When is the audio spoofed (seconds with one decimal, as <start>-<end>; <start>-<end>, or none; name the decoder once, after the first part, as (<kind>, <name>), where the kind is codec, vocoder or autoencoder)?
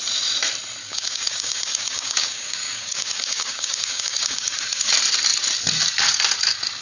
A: 0.8-4.6 (codec, DAC)